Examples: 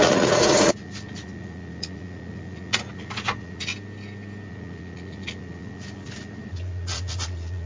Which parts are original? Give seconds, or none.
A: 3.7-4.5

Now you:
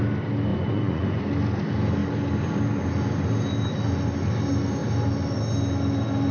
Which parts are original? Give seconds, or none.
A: 0.0-0.5; 1.2-6.3

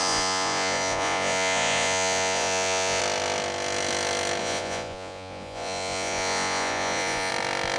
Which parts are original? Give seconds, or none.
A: 3.0-4.4; 7.3-7.8

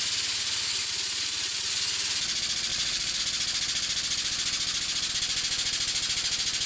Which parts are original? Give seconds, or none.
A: 0.0-0.8; 1.7-2.7; 3.2-6.7

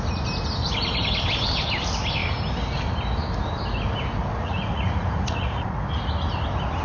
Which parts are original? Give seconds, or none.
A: 0.0-4.3; 5.8-6.8

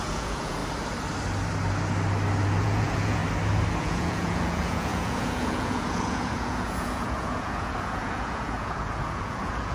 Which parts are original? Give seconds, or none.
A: 0.6-2.6; 3.2-3.8

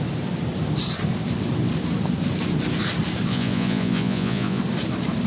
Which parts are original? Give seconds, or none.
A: 0.0-3.3; 4.6-5.3

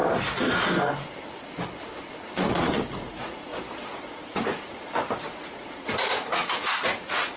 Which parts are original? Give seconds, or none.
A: 0.0-2.0; 3.5-4.3